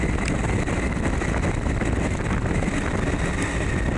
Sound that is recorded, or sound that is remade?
recorded